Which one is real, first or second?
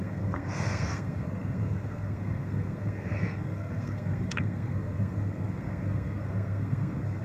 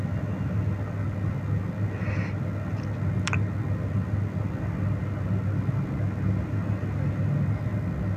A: second